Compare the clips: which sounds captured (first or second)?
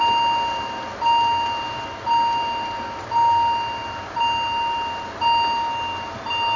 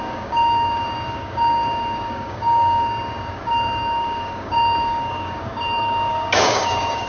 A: first